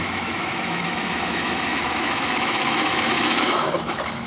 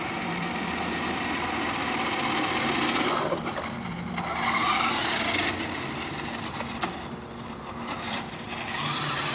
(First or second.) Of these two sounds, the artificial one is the first